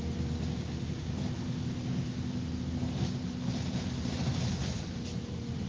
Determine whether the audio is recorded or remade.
recorded